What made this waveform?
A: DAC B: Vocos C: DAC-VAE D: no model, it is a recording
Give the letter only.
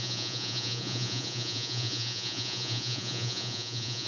B